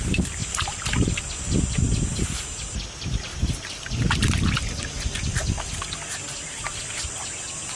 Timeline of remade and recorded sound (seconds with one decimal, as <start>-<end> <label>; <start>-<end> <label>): 0.0-7.8 recorded